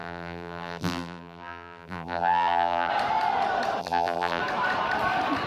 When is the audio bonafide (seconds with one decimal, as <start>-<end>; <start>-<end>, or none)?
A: 2.9-3.8; 4.4-5.5